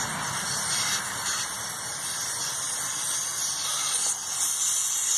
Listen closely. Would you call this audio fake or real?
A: real